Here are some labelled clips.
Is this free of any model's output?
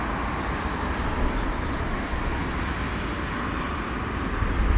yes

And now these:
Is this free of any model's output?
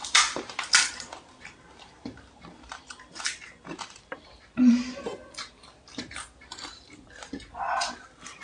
no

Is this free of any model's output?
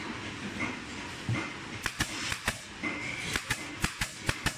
yes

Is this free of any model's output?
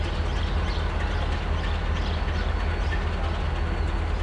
yes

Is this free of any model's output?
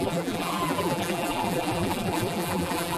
no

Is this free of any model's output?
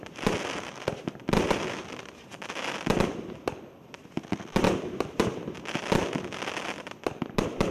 yes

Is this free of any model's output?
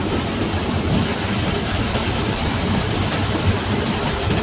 no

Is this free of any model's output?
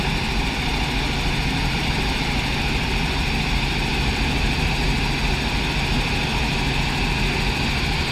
yes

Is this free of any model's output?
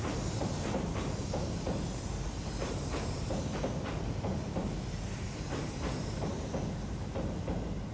no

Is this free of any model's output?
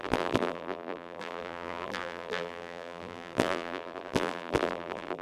no